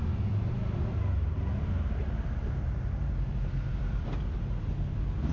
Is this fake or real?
real